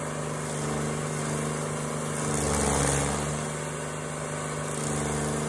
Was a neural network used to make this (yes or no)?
no